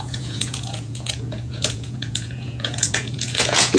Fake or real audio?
fake